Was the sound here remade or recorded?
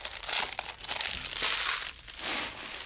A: recorded